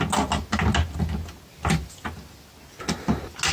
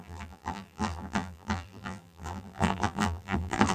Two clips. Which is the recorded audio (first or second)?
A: first